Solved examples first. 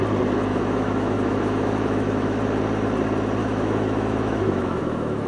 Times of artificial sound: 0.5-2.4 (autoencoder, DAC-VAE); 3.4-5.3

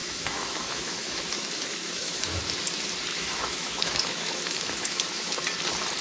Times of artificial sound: 0.0-2.4 (autoencoder, DAC-VAE); 3.1-5.3

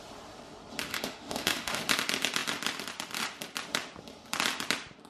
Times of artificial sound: 0.9-1.8 (autoencoder, DAC-VAE)

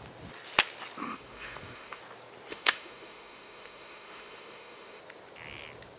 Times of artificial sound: 1.0-2.0 (autoencoder, DAC-VAE); 2.5-5.0